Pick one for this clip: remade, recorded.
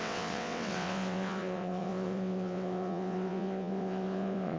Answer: remade